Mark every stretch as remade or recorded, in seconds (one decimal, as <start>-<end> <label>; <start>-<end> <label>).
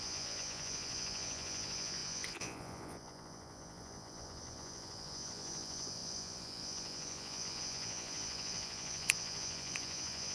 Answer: 0.0-10.3 remade